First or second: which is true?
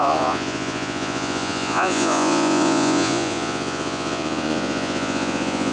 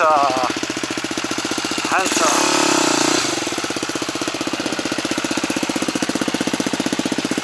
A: second